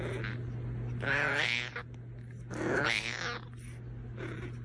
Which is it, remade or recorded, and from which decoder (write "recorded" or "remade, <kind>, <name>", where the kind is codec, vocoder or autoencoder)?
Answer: recorded